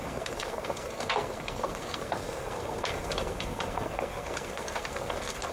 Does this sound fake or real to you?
fake